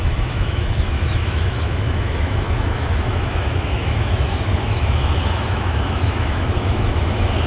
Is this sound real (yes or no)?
no